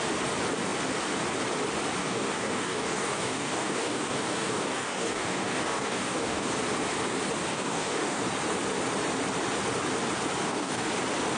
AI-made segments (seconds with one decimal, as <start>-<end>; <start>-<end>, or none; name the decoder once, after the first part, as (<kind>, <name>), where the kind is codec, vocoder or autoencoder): 2.0-6.5 (codec, DAC); 7.5-8.2; 10.4-10.9